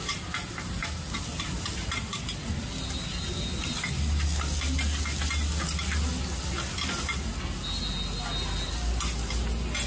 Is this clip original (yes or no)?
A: yes